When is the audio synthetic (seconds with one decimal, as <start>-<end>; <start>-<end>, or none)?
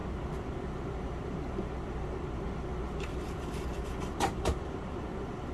0.0-5.5